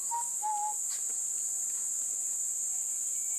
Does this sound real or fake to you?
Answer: real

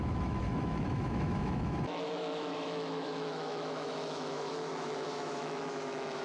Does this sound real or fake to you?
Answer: fake